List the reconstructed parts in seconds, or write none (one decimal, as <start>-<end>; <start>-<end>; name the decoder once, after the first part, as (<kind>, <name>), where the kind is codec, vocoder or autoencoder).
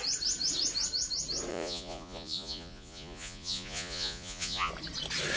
1.5-4.7 (vocoder, Vocos)